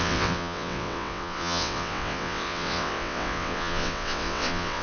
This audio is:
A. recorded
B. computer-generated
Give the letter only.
B